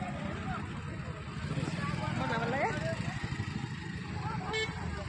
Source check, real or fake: real